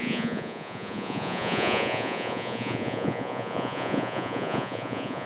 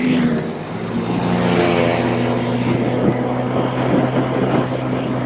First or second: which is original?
second